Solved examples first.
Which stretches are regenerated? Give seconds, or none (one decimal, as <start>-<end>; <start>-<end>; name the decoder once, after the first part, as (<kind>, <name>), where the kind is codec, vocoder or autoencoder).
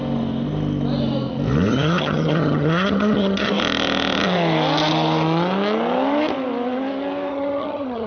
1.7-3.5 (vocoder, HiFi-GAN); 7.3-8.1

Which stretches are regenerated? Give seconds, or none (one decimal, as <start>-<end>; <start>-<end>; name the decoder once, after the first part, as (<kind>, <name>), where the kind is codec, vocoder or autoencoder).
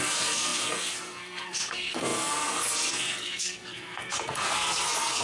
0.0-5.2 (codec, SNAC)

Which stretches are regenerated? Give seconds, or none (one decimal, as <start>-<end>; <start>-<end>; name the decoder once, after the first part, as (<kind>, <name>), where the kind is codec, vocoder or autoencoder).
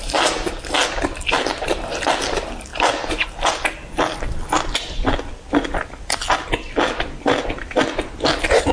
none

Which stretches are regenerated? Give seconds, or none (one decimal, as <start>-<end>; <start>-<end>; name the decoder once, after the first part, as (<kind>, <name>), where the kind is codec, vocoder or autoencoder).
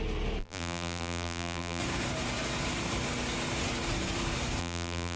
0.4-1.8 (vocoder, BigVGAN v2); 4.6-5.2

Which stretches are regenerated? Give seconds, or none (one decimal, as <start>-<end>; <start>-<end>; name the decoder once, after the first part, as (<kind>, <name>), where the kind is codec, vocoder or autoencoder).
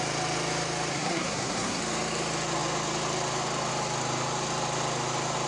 0.9-1.8 (codec, SNAC)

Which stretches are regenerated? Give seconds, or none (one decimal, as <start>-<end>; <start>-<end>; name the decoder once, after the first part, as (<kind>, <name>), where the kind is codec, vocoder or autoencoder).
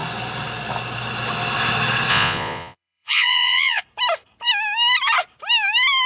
2.1-3.8 (vocoder, Vocos)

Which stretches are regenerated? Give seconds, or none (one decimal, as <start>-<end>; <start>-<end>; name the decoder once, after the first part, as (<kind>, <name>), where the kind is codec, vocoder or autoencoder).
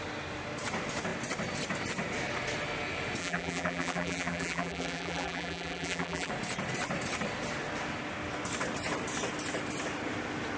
3.2-6.3 (vocoder, BigVGAN v2)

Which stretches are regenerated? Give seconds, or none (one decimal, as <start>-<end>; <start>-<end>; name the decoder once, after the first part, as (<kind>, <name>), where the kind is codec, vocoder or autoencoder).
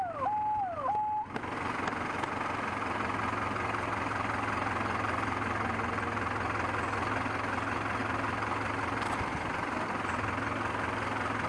none